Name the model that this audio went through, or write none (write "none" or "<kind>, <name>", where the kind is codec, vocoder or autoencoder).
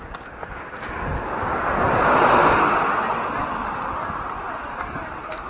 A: none